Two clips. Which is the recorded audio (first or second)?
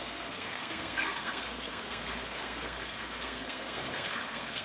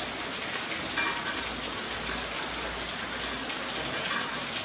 second